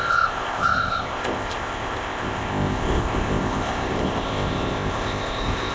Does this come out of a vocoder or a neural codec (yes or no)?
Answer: yes